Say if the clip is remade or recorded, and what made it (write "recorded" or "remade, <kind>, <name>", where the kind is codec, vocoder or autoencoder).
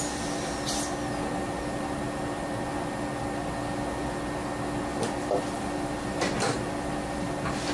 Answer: recorded